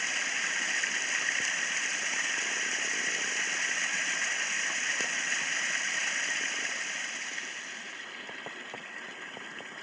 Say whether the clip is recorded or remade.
recorded